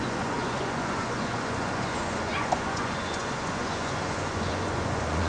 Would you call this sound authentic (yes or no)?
no